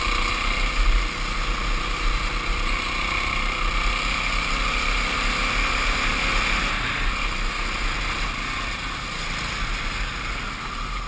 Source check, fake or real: real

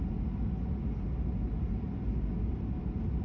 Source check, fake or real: real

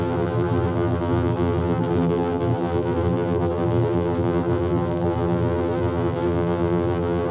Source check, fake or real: fake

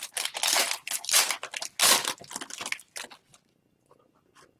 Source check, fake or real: real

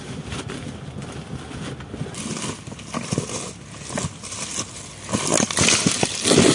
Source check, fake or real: real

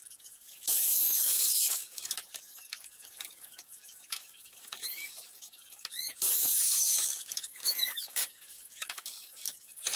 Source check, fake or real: fake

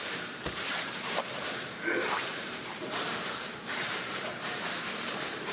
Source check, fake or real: fake